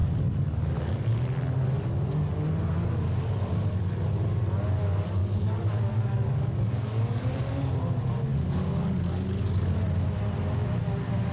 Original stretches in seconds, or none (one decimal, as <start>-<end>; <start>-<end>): 1.0-5.2; 7.5-8.3; 9.8-11.3